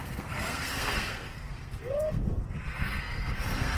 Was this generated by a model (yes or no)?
yes